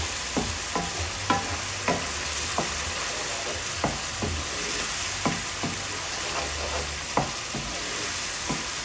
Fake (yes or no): no